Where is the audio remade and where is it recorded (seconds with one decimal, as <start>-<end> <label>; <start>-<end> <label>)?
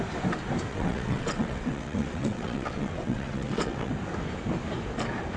0.0-0.7 recorded; 0.7-3.9 remade; 3.9-5.4 recorded